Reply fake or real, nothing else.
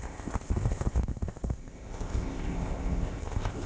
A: fake